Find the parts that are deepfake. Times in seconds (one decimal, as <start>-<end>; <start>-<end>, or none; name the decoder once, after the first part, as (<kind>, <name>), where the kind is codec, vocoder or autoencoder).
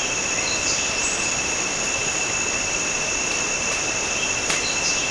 none